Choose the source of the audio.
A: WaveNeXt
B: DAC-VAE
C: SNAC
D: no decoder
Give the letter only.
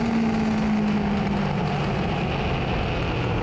D